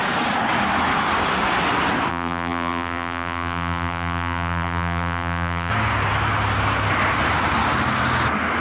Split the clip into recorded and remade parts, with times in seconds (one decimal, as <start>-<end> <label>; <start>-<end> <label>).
0.0-2.1 recorded; 2.1-5.7 remade; 5.7-8.6 recorded